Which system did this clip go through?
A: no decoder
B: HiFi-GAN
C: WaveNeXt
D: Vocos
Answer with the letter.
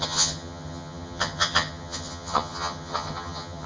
B